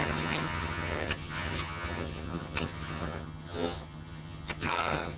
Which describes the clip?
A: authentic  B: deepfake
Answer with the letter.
B